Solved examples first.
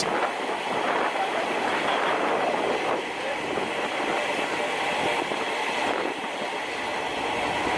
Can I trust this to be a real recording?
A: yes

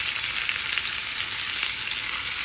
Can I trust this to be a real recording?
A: yes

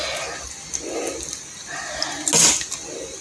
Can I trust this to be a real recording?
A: yes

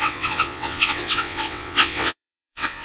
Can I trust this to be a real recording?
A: no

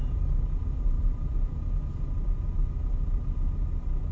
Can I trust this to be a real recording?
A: yes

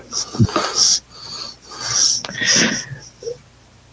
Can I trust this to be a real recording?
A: yes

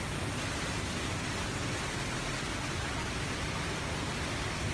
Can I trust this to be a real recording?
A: yes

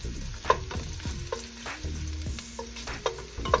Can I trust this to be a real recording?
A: yes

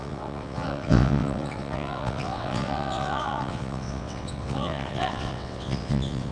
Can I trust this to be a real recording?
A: no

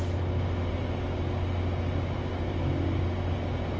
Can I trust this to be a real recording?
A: yes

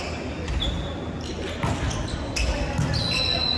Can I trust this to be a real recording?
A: yes